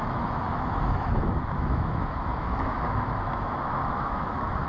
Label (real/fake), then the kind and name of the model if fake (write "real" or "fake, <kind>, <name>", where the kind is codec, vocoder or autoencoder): fake, autoencoder, DAC-VAE